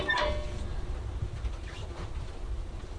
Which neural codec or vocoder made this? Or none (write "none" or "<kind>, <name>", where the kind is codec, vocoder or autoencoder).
none